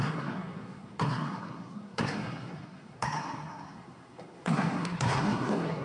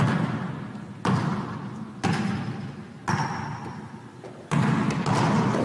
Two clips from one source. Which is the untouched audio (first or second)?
second